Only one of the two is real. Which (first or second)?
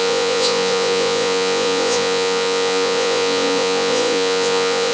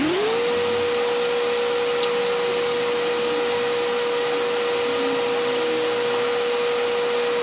second